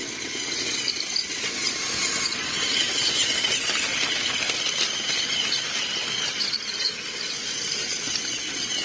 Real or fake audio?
real